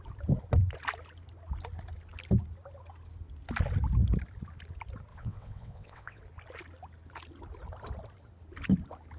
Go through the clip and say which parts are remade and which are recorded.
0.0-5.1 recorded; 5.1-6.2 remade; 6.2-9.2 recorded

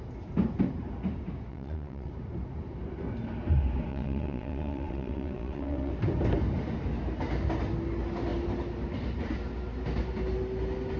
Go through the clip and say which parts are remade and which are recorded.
0.0-1.5 recorded; 1.5-2.1 remade; 2.1-3.9 recorded; 3.9-5.9 remade; 5.9-11.0 recorded

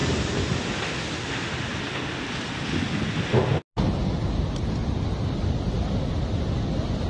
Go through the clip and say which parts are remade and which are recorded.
0.0-7.1 recorded

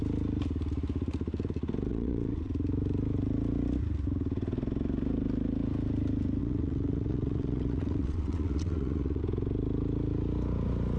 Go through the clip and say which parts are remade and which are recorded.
0.0-1.9 recorded; 1.9-2.5 remade; 2.5-6.4 recorded; 6.4-9.2 remade; 9.2-11.0 recorded

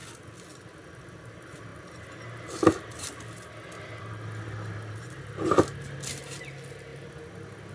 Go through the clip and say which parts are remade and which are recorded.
0.0-7.7 recorded

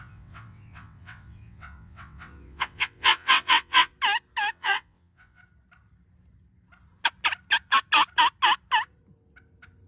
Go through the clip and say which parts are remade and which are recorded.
0.0-3.9 remade; 3.9-4.5 recorded; 4.5-5.4 remade; 5.4-9.9 recorded

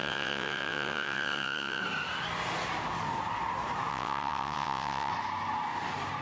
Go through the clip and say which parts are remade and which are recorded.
0.0-1.8 remade; 1.8-3.9 recorded; 3.9-5.1 remade; 5.1-6.2 recorded

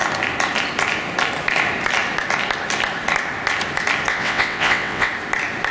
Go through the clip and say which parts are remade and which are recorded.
0.0-4.1 recorded; 4.1-5.1 remade; 5.1-5.7 recorded